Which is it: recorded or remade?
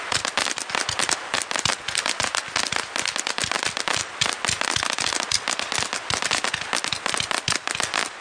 recorded